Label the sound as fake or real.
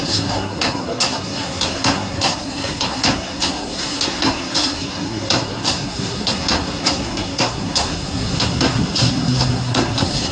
fake